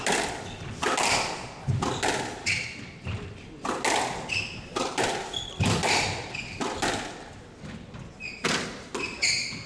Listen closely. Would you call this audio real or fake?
real